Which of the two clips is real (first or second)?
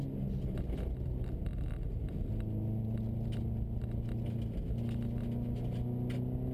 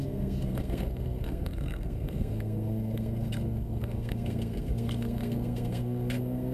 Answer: first